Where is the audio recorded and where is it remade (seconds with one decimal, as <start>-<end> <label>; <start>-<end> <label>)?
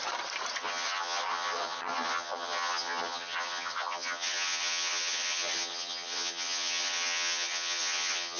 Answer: 0.0-0.6 recorded; 0.6-8.4 remade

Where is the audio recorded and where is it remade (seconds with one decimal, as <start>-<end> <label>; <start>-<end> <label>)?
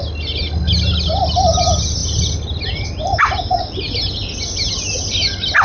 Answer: 0.0-5.6 recorded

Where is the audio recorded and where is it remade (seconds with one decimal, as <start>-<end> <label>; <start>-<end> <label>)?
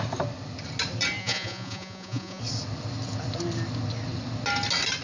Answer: 0.0-1.2 recorded; 1.2-2.4 remade; 2.4-5.0 recorded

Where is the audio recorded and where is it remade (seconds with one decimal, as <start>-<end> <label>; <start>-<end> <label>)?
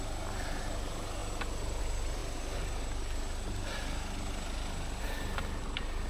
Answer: 0.0-6.1 recorded